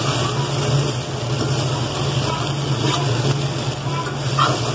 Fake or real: real